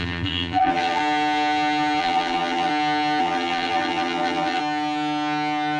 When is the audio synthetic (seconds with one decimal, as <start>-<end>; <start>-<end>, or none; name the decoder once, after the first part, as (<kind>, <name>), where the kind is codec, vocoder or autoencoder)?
0.0-1.0 (vocoder, BigVGAN v2); 2.0-2.7; 3.2-4.6